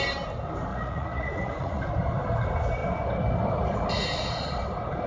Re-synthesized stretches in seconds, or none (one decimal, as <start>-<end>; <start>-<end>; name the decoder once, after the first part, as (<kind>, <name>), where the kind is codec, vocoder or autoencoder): 0.7-1.8 (vocoder, Vocos)

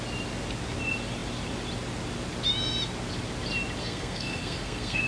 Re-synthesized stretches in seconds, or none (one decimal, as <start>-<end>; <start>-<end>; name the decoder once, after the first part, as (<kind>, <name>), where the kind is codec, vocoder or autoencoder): 3.8-5.1 (codec, SNAC)

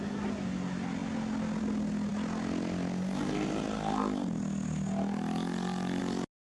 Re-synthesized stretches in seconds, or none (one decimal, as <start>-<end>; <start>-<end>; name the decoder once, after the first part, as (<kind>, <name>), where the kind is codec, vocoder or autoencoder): none